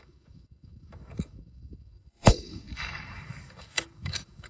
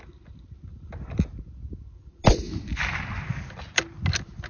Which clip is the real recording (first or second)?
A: second